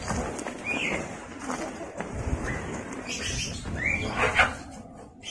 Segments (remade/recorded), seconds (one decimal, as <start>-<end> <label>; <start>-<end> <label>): 0.0-0.8 recorded; 0.8-3.2 remade; 3.2-5.3 recorded